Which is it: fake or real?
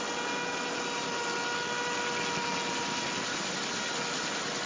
real